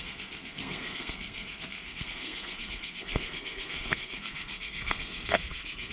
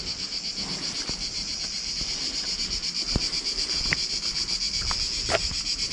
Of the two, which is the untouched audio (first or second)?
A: second